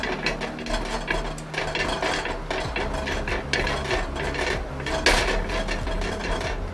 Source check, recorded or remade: recorded